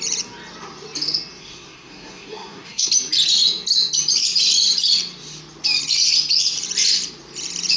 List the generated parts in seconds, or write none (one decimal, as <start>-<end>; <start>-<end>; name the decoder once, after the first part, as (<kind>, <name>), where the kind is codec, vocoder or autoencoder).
1.4-2.9 (codec, SNAC)